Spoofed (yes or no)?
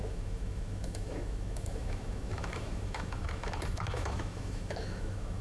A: yes